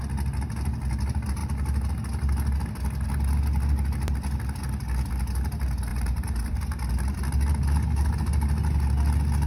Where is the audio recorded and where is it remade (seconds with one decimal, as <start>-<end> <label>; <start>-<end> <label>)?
0.0-5.9 recorded; 5.9-6.6 remade; 6.6-9.5 recorded